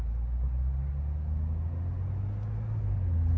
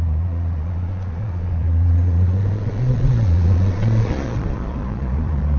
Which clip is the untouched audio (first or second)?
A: first